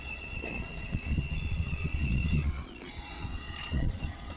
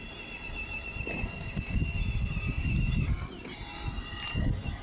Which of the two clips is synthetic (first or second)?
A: first